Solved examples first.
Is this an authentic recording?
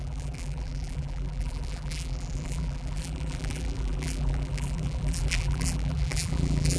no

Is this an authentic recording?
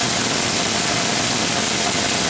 yes